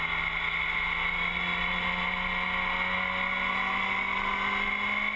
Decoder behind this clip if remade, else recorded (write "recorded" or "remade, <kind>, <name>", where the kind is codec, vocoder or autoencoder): recorded